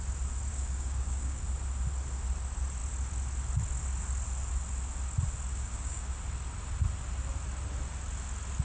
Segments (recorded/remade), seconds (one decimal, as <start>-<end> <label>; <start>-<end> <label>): 0.0-0.5 recorded; 0.5-1.4 remade; 1.4-5.5 recorded; 5.5-6.1 remade; 6.1-8.6 recorded